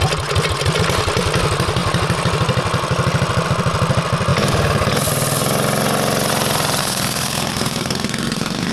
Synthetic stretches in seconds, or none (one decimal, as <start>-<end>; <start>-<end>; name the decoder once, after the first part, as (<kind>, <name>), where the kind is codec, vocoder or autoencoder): 6.8-8.7 (codec, SNAC)